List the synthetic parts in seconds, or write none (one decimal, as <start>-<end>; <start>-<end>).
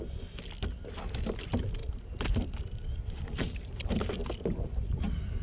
1.8-5.0